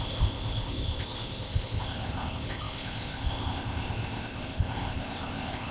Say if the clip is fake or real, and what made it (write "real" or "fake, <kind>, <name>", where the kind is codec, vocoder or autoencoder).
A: fake, codec, ZipCodec